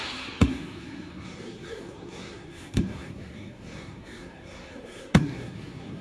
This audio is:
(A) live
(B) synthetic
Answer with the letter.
B